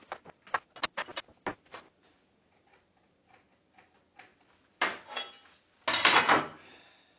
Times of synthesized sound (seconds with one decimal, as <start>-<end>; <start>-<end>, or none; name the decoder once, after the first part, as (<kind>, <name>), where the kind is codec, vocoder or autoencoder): none